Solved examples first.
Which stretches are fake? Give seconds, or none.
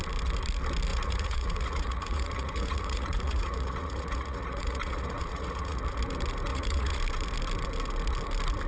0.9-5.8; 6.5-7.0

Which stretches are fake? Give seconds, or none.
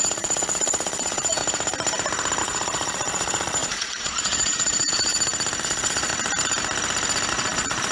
0.0-1.4; 2.4-5.1; 5.6-6.1; 7.3-7.9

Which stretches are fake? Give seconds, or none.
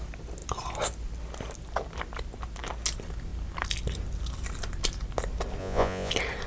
5.6-6.1